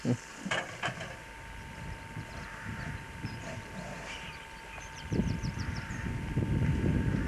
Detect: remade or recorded remade